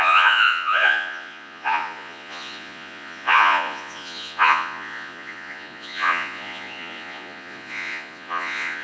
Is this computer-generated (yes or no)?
yes